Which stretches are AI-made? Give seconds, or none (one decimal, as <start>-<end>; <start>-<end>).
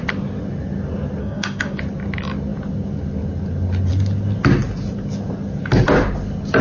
1.2-1.8